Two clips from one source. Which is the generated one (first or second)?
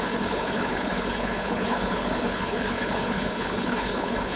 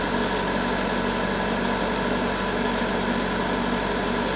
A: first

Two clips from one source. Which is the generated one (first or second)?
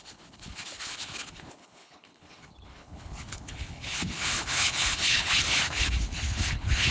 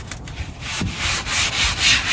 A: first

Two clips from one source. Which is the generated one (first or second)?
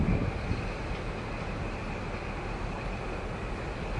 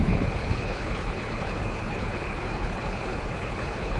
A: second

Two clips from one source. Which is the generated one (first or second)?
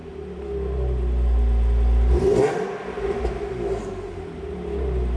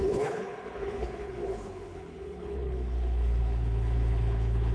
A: second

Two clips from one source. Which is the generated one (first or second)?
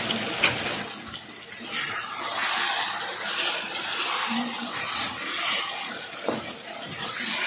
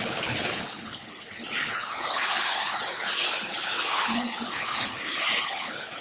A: second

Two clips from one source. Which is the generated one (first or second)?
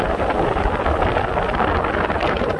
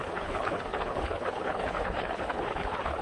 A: second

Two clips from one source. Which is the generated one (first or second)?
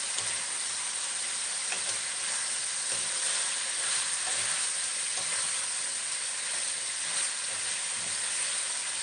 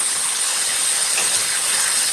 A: second